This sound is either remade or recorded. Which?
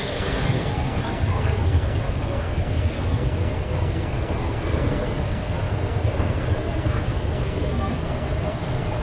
remade